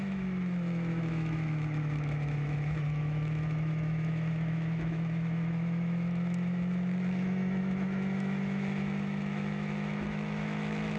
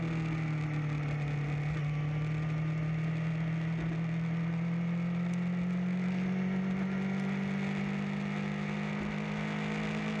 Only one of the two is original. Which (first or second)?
second